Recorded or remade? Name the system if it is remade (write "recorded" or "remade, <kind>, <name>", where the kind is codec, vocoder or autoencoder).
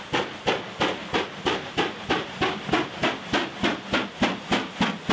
recorded